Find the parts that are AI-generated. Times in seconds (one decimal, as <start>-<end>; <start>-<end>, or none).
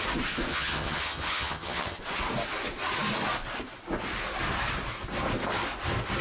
0.5-2.0